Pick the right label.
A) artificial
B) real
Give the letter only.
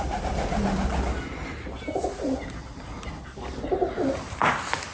B